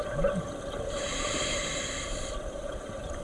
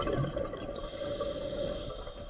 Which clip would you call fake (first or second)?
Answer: first